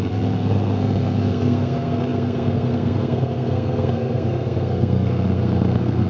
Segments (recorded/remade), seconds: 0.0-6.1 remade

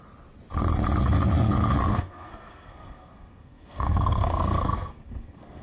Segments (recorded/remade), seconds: 0.0-1.9 recorded; 1.9-5.6 remade

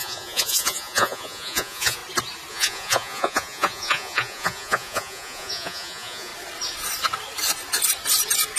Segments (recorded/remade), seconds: 0.0-2.0 remade; 2.0-2.5 recorded; 2.5-6.3 remade; 6.3-8.6 recorded

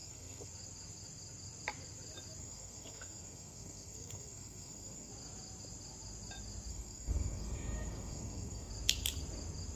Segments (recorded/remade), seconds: 0.0-0.5 remade; 0.5-2.4 recorded; 2.4-5.1 remade; 5.1-6.7 recorded; 6.7-8.7 remade; 8.7-9.8 recorded